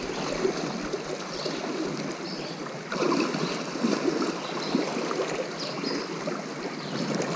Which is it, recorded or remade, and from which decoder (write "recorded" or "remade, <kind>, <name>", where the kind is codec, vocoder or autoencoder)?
recorded